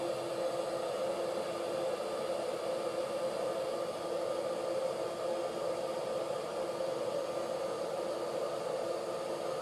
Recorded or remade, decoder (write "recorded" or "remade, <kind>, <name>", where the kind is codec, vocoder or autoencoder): recorded